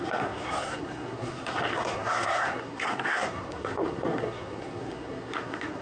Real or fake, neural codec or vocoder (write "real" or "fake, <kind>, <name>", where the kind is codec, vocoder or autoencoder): fake, codec, SNAC